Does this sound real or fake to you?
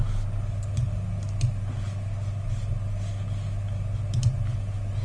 real